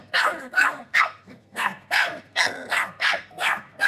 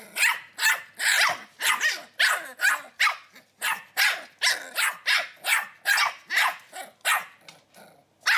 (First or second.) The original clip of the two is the second